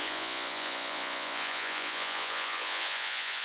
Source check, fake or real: fake